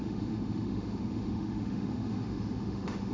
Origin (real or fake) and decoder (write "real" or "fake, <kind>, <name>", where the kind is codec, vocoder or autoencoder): fake, autoencoder, DAC-VAE